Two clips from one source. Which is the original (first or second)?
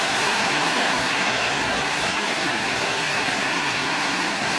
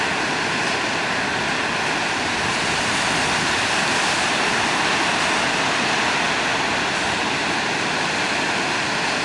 second